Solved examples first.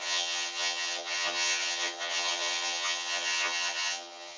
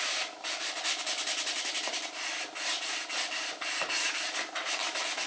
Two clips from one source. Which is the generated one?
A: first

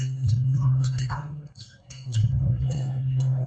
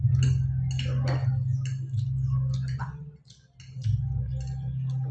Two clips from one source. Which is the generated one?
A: first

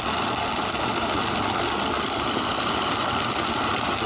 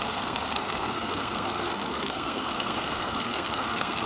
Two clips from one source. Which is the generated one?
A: second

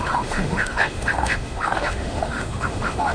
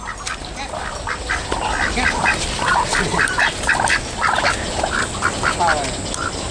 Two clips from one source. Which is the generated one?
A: first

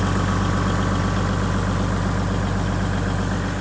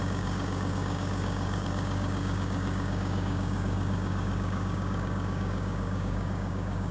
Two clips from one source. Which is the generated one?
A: second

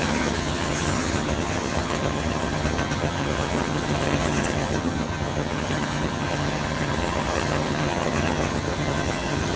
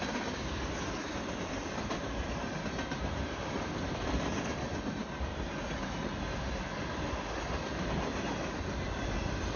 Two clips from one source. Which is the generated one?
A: first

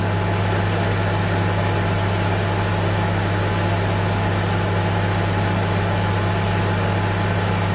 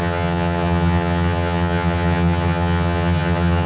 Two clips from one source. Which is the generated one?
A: second